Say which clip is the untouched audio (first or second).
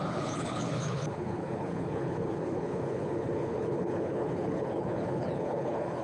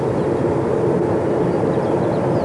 second